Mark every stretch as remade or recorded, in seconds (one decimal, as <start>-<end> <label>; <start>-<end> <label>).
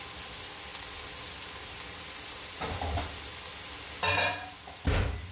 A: 0.0-5.3 recorded